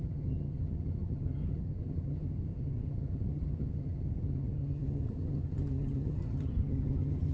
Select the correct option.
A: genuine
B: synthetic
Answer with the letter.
B